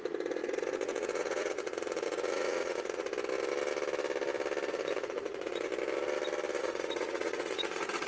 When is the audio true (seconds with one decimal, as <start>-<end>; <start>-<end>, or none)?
3.1-4.7; 5.7-6.6